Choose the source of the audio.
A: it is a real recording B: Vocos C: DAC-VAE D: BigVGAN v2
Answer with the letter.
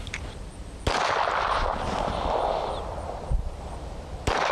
A